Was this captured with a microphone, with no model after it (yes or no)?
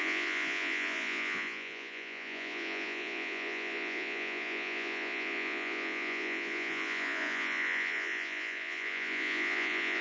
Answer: no